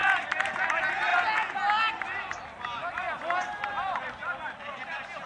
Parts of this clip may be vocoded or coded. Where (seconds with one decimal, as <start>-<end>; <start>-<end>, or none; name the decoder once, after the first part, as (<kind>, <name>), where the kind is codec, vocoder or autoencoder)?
none